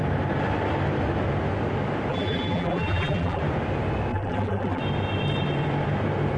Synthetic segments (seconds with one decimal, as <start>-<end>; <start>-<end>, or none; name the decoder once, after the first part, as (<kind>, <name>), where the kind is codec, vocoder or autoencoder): 2.1-3.4 (vocoder, BigVGAN v2); 4.1-4.8